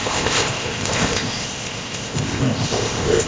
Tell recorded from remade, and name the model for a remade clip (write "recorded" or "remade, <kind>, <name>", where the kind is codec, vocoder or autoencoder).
remade, codec, ZipCodec